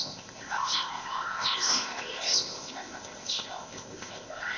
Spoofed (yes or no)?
yes